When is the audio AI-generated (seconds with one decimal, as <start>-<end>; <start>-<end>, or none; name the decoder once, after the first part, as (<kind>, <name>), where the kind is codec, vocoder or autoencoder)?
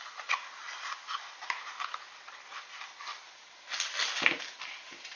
none